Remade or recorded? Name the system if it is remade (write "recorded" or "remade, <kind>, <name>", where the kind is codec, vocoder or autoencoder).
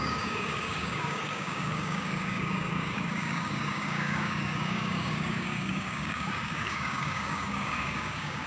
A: remade, codec, DAC